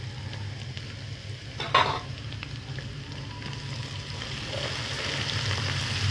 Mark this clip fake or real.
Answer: real